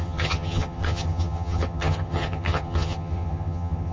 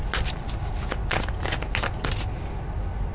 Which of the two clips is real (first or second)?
second